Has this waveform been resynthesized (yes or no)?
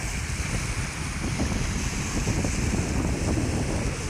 no